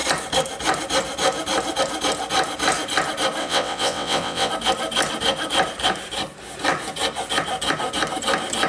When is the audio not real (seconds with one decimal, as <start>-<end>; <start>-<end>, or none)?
3.4-4.5